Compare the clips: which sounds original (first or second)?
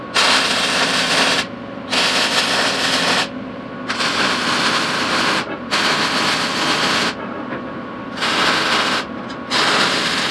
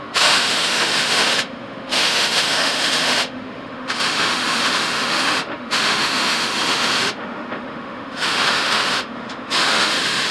first